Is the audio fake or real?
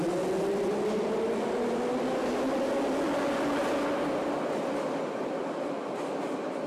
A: real